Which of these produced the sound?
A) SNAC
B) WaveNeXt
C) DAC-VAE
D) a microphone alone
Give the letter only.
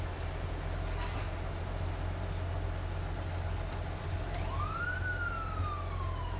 D